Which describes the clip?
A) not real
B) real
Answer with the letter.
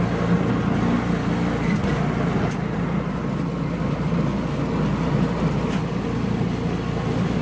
B